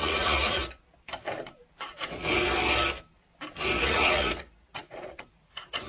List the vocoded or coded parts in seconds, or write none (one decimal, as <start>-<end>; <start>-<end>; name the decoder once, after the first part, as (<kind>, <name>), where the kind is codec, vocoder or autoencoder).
0.0-0.6 (vocoder, Vocos); 3.8-5.9